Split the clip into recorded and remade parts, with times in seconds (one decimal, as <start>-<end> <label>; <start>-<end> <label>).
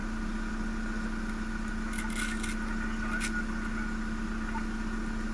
0.0-5.3 recorded